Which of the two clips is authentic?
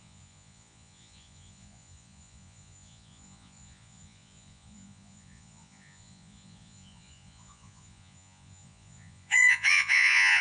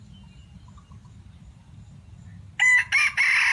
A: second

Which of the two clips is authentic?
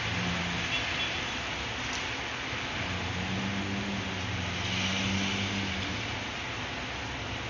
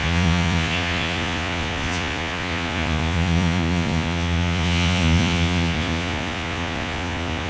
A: first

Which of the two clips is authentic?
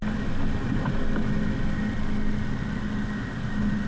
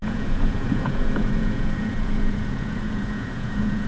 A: first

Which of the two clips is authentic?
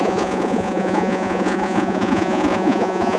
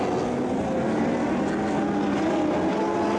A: second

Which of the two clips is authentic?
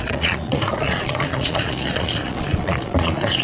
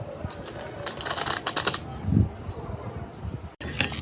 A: second